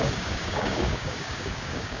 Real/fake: fake